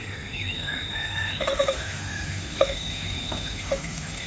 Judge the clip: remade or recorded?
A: remade